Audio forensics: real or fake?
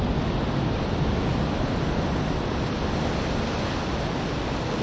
real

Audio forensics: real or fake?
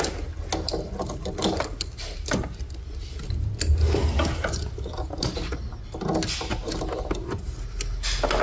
real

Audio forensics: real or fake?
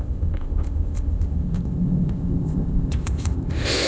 fake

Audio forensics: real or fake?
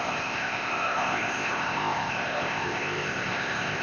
fake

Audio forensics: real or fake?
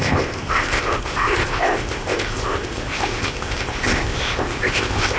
fake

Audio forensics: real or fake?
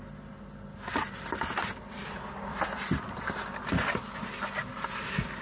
real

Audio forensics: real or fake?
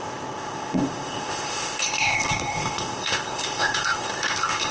fake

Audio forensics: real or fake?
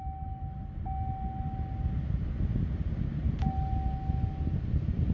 real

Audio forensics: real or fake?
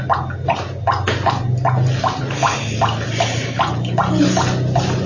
real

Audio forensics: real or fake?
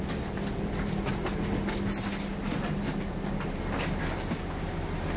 real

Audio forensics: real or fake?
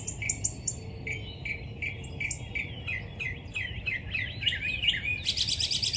real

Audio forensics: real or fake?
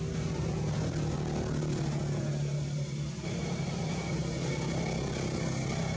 real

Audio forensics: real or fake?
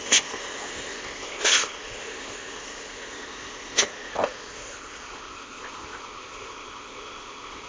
fake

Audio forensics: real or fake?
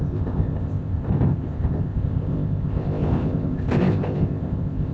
fake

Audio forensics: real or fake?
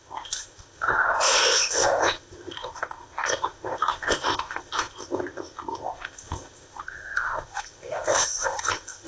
fake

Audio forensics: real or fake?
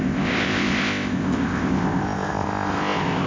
fake